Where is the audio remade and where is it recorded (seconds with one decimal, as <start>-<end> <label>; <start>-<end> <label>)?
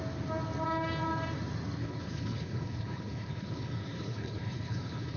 0.0-1.8 recorded; 1.8-5.2 remade